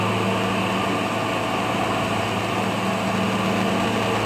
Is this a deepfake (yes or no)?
no